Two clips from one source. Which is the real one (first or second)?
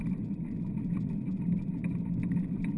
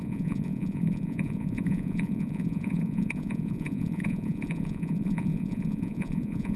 first